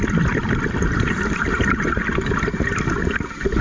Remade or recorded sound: recorded